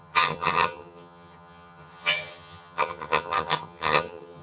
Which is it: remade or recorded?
remade